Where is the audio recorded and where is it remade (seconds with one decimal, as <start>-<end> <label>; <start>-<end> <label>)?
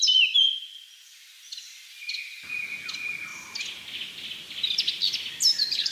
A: 0.0-5.9 recorded